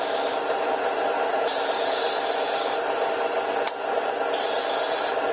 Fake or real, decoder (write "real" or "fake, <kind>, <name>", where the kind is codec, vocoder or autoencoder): fake, vocoder, BigVGAN v2